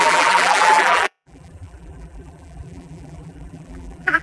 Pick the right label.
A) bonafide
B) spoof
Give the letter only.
B